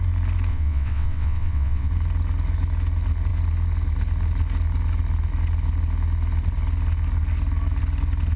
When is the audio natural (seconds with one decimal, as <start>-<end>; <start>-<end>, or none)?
0.0-0.5; 1.9-8.4